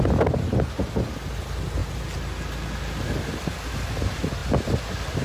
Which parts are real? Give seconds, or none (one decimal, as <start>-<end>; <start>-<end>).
0.0-5.2